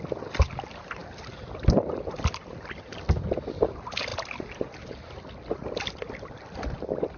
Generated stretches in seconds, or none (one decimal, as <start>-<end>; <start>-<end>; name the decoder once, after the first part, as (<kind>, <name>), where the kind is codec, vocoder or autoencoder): none